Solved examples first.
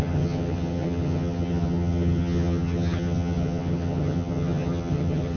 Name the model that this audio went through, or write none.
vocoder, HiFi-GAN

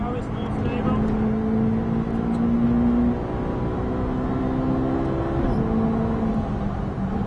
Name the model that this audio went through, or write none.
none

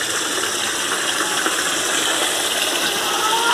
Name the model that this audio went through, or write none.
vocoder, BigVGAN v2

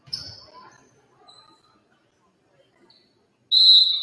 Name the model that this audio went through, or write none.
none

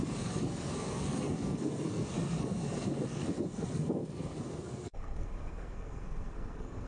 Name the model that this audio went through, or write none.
codec, SNAC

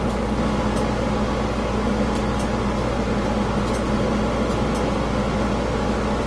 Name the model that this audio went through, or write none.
none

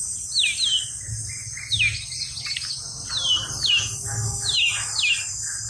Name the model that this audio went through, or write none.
none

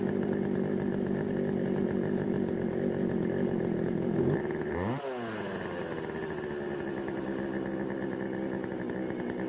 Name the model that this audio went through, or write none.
none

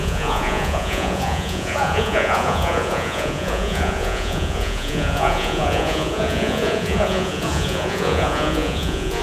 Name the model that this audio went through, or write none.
vocoder, Vocos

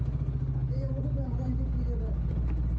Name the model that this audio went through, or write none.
none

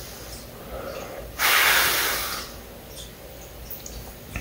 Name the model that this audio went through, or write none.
none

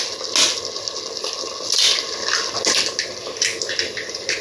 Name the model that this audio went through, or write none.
none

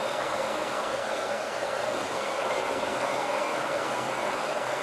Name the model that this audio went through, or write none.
codec, SNAC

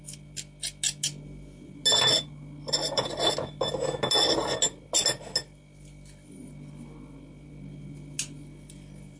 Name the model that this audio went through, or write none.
none